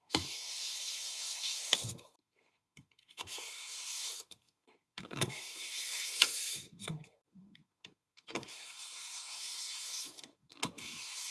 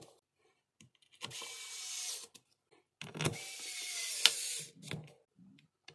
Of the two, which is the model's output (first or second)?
first